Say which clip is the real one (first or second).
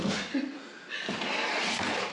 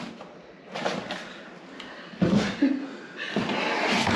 second